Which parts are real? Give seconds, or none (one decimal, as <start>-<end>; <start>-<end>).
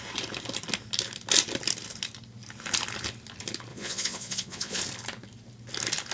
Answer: 0.0-3.7; 4.8-6.1